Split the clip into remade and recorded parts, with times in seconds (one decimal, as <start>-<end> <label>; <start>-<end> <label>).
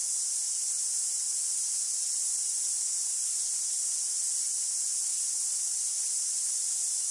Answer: 0.0-7.1 recorded